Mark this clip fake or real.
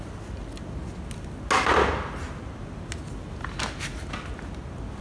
real